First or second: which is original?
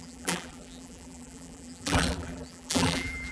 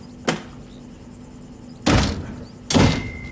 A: second